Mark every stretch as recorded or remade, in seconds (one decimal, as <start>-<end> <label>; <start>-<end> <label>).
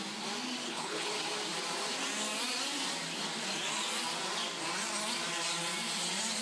0.0-0.6 recorded; 0.6-1.1 remade; 1.1-6.4 recorded